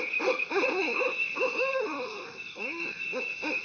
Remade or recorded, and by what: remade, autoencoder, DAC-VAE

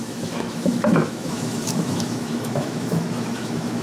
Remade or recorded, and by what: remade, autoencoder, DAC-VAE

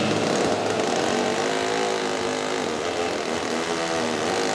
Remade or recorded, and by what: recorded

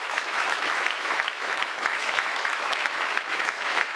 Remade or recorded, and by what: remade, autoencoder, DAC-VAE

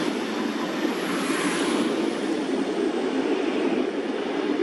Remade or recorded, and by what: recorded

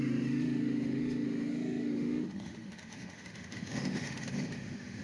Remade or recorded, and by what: remade, autoencoder, DAC-VAE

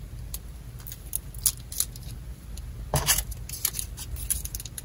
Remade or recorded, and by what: recorded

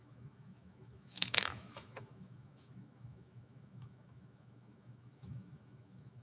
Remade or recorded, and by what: remade, autoencoder, DAC-VAE